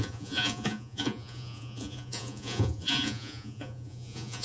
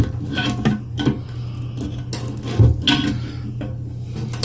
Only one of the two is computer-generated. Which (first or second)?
first